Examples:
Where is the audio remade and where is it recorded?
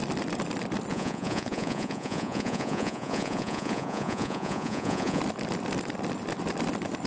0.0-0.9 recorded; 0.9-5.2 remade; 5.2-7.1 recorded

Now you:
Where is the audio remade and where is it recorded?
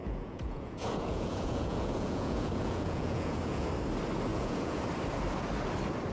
0.0-3.7 remade; 3.7-4.3 recorded; 4.3-4.8 remade; 4.8-6.1 recorded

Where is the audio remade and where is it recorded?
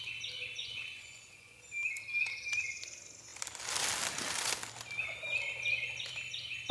0.0-0.6 recorded; 0.6-1.6 remade; 1.6-6.7 recorded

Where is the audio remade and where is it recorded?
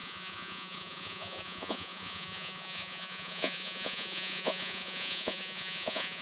0.0-6.2 remade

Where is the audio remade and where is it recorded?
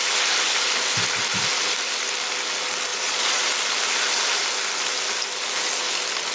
0.0-2.9 recorded; 2.9-3.4 remade; 3.4-6.3 recorded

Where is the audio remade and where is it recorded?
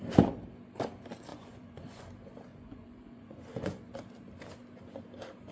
0.0-1.3 recorded; 1.3-2.0 remade; 2.0-2.5 recorded; 2.5-3.8 remade; 3.8-5.5 recorded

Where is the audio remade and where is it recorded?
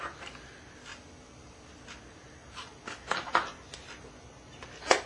0.0-5.1 recorded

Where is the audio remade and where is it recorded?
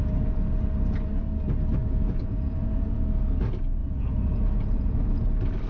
0.0-1.8 recorded; 1.8-3.2 remade; 3.2-3.8 recorded; 3.8-4.9 remade; 4.9-5.7 recorded